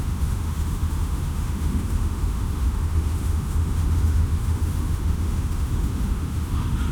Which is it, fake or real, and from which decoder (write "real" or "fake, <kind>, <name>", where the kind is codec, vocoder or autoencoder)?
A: fake, autoencoder, DAC-VAE